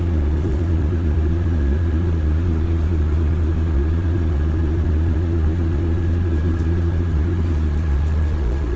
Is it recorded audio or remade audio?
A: remade